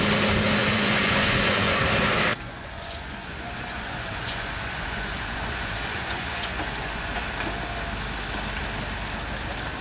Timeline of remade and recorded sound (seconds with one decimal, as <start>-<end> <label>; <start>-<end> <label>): 0.0-0.6 recorded; 0.6-1.8 remade; 1.8-2.3 recorded; 2.3-7.2 remade; 7.2-9.8 recorded